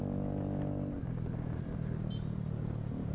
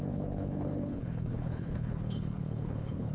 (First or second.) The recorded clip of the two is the first